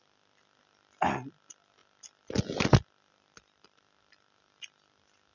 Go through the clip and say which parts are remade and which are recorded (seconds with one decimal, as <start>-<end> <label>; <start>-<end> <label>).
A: 0.0-5.3 recorded